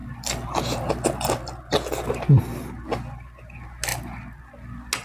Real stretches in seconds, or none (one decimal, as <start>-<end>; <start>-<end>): 0.9-3.9; 4.4-5.0